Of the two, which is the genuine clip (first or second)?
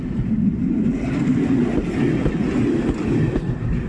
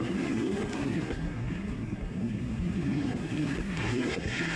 first